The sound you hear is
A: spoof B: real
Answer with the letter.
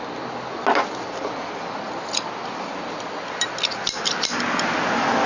B